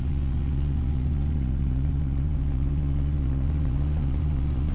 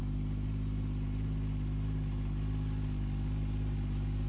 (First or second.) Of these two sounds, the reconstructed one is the first